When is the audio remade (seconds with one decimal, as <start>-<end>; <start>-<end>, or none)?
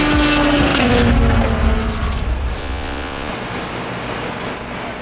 2.6-3.3